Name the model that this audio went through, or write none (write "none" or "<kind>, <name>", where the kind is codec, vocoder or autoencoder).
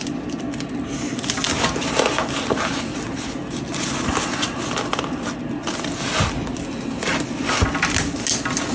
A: none